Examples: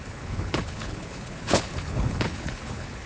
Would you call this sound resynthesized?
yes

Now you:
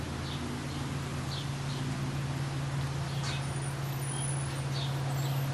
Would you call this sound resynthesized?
no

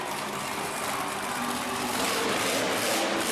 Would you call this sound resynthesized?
no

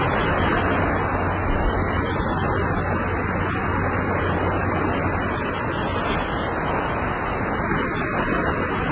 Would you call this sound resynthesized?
no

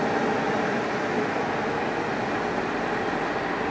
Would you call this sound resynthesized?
no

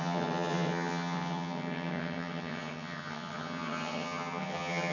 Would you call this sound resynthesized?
yes